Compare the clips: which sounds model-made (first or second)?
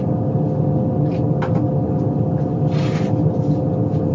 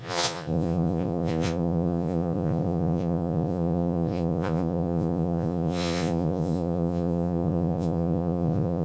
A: second